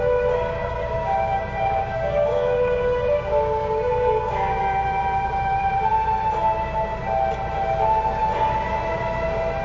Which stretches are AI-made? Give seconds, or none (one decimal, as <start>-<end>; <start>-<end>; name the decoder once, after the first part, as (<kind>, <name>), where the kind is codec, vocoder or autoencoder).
0.6-4.6 (codec, DAC)